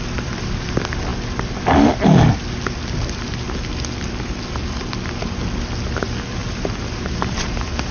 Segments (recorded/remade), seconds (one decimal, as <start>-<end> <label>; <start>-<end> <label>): 0.0-7.9 recorded